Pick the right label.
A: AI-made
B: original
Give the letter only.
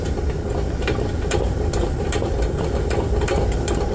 B